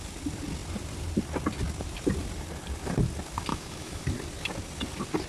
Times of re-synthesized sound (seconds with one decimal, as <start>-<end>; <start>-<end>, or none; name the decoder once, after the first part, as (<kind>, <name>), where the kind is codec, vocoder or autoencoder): 3.5-4.0 (autoencoder, DAC-VAE)